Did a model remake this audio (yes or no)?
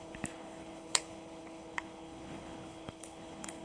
yes